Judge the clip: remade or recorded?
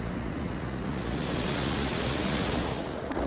remade